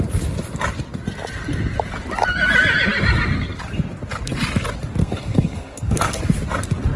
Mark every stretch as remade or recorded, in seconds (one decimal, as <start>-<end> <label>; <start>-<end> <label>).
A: 0.0-5.0 recorded; 5.0-6.2 remade; 6.2-7.0 recorded